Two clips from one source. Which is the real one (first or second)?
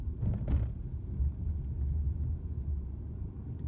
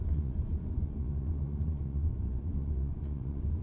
first